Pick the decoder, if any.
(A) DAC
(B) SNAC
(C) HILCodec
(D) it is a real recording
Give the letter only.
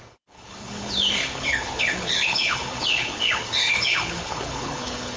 C